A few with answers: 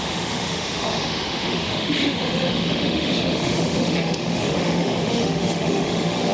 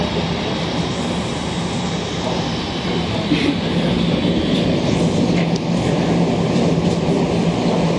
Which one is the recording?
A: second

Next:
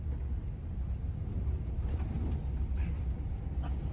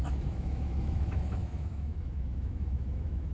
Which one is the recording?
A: first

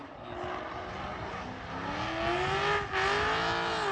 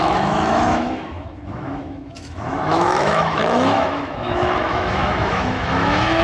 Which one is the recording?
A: first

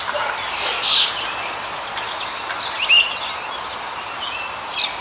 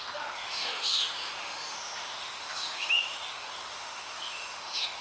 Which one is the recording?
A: first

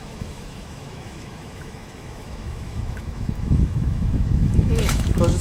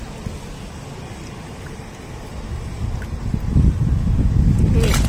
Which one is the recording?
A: second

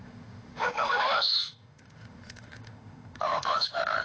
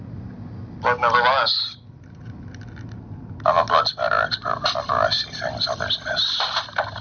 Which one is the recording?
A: second